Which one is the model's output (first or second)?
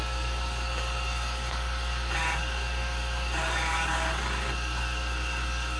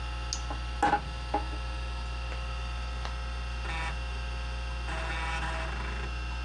first